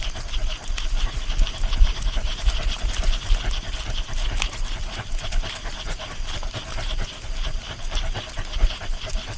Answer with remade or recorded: recorded